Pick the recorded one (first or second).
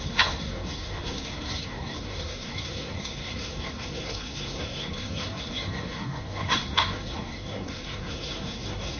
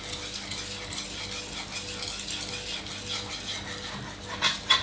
second